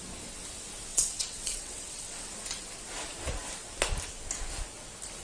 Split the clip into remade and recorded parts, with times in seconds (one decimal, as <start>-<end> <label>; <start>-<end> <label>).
0.0-0.9 recorded; 0.9-2.3 remade; 2.3-5.2 recorded